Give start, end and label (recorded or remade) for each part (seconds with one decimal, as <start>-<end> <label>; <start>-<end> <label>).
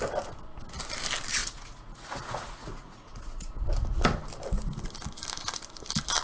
0.0-1.4 recorded; 1.4-3.5 remade; 3.5-6.2 recorded